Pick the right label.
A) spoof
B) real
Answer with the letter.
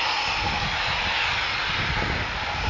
B